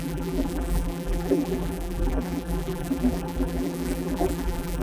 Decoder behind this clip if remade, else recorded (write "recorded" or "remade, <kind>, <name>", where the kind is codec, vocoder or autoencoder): remade, vocoder, BigVGAN v2